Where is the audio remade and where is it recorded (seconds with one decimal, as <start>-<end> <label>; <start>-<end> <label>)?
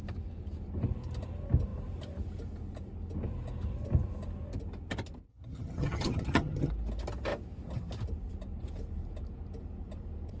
0.0-5.3 recorded; 5.3-6.7 remade; 6.7-10.4 recorded